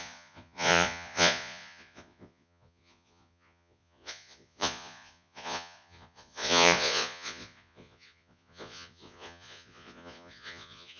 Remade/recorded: remade